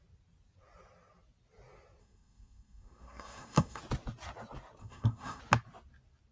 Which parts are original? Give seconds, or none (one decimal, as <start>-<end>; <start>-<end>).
0.0-2.0; 3.8-4.8; 5.4-6.3